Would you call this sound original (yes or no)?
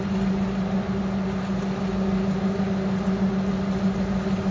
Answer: yes